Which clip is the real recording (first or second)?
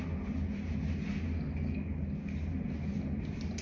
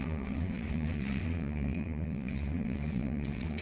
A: first